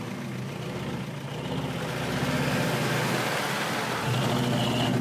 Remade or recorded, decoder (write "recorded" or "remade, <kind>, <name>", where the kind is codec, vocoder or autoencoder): recorded